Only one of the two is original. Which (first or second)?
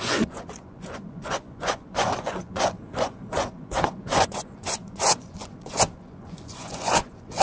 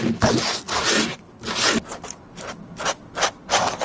second